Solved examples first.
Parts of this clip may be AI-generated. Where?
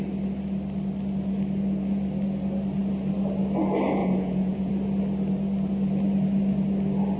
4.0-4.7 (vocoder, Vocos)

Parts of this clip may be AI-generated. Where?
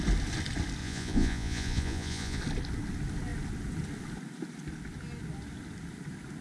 0.8-2.4 (vocoder, Vocos)